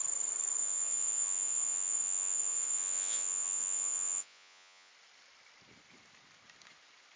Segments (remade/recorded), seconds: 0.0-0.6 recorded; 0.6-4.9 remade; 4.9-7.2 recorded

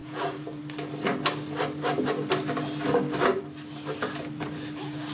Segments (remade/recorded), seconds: 0.0-0.6 remade; 0.6-5.1 recorded

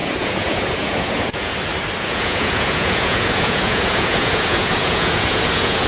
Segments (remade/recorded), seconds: 0.0-1.5 remade; 1.5-2.0 recorded; 2.0-5.9 remade

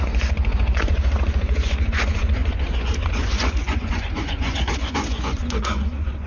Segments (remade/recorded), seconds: 0.0-6.3 remade

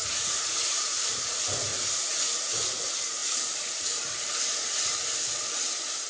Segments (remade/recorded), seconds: 0.0-1.1 remade; 1.1-1.7 recorded; 1.7-2.7 remade; 2.7-6.1 recorded

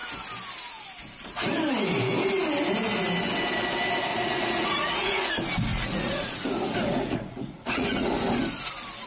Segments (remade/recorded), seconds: 0.0-4.1 recorded; 4.1-5.3 remade; 5.3-5.7 recorded; 5.7-8.1 remade; 8.1-9.1 recorded

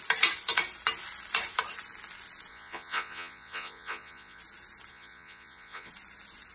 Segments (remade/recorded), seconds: 0.0-2.5 recorded; 2.5-4.4 remade; 4.4-4.9 recorded; 4.9-5.9 remade; 5.9-6.5 recorded